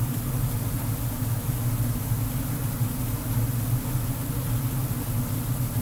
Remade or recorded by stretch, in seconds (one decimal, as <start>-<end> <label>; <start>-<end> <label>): 0.0-5.8 recorded